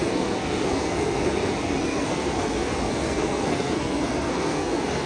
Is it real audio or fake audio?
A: fake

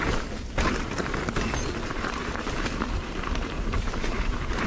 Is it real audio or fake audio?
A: fake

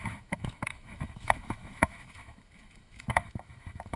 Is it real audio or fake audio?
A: fake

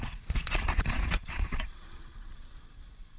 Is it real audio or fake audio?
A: fake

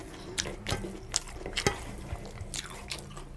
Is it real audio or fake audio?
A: real